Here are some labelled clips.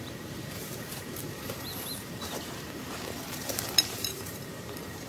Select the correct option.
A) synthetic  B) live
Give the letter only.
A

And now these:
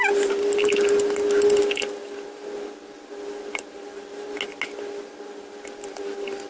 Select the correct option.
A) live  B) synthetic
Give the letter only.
A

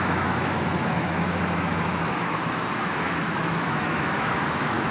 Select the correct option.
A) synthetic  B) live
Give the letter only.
A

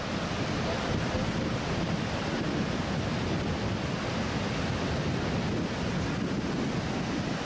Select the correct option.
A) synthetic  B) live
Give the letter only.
B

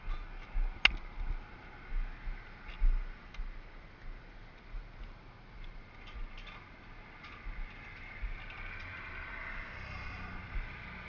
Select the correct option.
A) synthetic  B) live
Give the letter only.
B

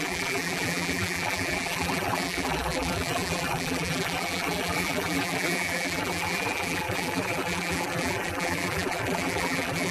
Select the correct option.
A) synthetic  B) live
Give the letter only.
A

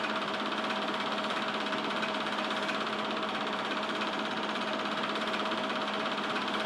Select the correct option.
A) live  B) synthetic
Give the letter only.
B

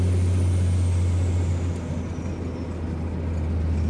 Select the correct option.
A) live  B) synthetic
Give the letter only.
A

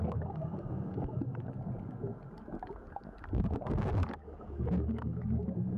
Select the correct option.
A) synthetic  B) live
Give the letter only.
A